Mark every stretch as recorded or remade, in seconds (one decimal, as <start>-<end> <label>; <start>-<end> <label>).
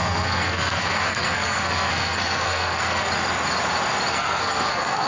0.0-3.1 remade; 3.1-4.1 recorded; 4.1-5.1 remade